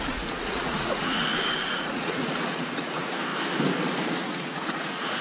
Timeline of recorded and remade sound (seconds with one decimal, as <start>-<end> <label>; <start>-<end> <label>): 0.0-1.2 remade; 1.2-1.7 recorded; 1.7-3.3 remade; 3.3-4.1 recorded; 4.1-5.2 remade